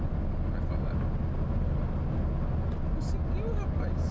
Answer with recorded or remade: recorded